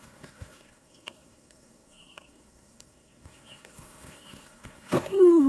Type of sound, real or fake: fake